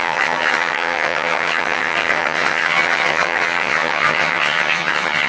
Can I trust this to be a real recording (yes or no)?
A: no